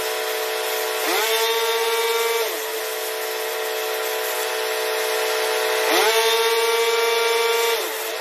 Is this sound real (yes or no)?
yes